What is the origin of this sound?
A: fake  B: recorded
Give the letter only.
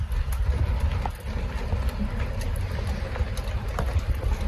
B